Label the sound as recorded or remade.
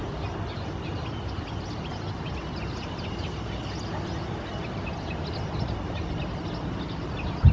recorded